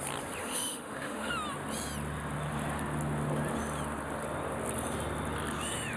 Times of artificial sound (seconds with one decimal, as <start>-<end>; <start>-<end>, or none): 0.4-1.3